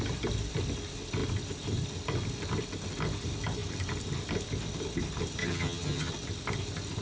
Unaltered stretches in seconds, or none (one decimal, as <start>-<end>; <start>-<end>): 0.0-5.4; 6.1-7.0